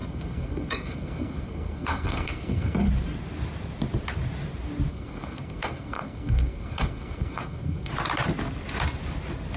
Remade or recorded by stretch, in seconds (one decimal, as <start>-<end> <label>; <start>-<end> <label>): 0.0-2.9 remade; 2.9-4.9 recorded; 4.9-7.9 remade; 7.9-9.6 recorded